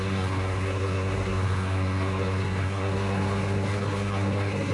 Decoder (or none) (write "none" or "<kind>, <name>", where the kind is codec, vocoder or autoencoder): codec, SNAC